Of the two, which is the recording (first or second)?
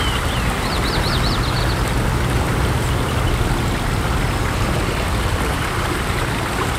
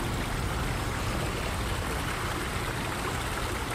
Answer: second